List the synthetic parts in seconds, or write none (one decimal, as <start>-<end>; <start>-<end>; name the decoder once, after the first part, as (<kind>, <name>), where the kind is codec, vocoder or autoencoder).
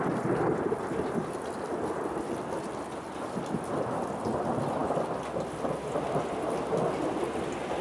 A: none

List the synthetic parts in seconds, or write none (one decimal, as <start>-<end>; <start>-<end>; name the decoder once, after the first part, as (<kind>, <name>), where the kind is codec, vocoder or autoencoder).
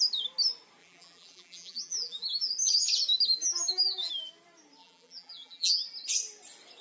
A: 0.8-2.5 (vocoder, BigVGAN v2); 3.4-4.1; 4.8-5.8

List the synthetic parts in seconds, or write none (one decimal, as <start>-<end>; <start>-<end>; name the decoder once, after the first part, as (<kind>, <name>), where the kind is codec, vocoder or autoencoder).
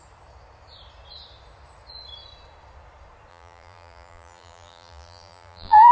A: 3.3-5.9 (vocoder, BigVGAN v2)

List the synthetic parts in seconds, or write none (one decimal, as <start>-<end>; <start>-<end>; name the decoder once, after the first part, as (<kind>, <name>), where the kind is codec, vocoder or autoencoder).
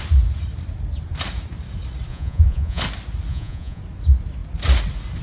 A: 2.1-2.8 (vocoder, Vocos); 3.3-3.8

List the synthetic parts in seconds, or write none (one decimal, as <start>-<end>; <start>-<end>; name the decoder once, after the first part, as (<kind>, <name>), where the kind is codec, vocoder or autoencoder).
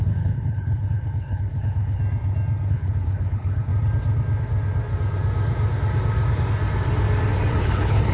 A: 0.0-2.0 (codec, HILCodec); 2.7-3.7; 7.5-8.1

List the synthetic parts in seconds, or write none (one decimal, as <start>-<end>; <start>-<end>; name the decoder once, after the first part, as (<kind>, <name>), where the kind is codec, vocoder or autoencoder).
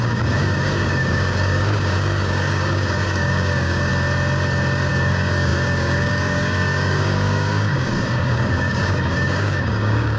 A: 0.0-3.9 (codec, DAC); 4.9-10.2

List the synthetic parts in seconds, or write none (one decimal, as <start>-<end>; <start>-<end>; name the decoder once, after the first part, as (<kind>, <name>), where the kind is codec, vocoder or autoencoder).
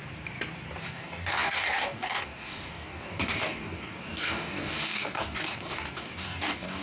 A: 0.8-6.8 (codec, DAC)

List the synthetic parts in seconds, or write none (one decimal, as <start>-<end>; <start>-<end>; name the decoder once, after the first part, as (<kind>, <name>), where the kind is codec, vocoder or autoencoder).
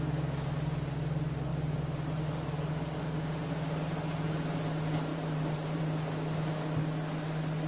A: 1.5-2.7 (vocoder, BigVGAN v2); 5.1-5.8